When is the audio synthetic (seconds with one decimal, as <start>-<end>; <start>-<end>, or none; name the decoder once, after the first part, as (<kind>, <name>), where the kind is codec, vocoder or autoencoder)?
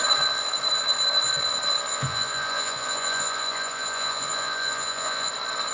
1.9-5.3 (vocoder, Vocos)